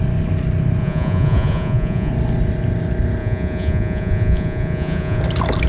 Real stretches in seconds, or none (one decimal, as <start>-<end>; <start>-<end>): 0.0-0.8; 2.1-3.2; 5.2-5.7